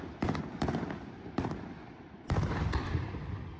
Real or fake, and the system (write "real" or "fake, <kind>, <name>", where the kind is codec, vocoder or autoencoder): fake, vocoder, BigVGAN v2